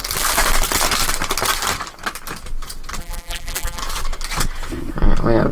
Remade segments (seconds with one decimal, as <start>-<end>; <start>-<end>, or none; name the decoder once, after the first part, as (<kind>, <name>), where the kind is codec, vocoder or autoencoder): 3.0-3.8 (vocoder, BigVGAN v2)